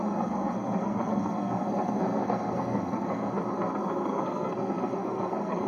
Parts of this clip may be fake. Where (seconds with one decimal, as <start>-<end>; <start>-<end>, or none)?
0.0-3.4; 4.0-5.7